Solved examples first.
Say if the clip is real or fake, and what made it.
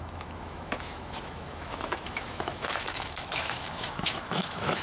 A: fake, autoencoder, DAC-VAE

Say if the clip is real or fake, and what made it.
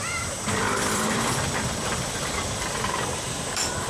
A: fake, vocoder, BigVGAN v2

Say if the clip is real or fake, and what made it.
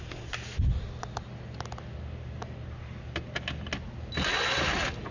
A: real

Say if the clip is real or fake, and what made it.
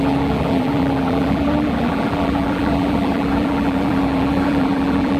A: fake, vocoder, BigVGAN v2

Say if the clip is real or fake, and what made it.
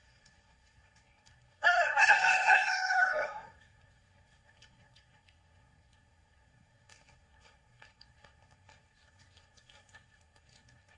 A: fake, codec, SNAC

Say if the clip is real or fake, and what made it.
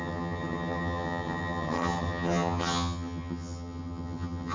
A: fake, vocoder, HiFi-GAN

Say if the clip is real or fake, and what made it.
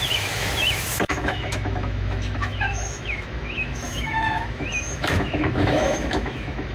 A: fake, autoencoder, DAC-VAE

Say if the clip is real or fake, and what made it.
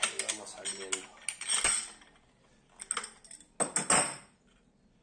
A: real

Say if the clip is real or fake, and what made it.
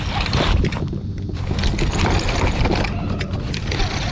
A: real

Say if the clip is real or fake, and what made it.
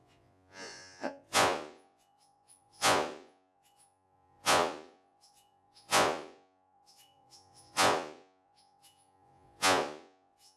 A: fake, vocoder, Vocos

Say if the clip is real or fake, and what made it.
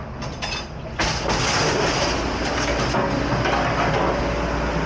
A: real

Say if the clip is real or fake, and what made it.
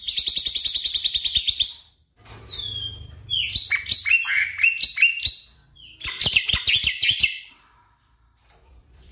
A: fake, vocoder, BigVGAN v2